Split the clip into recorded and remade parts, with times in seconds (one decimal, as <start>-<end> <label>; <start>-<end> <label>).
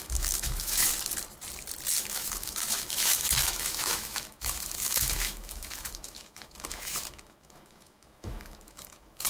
0.0-0.9 remade; 0.9-2.0 recorded; 2.0-9.3 remade